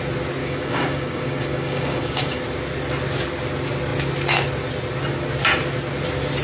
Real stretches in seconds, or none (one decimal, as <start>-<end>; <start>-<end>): 0.0-0.4; 2.4-6.4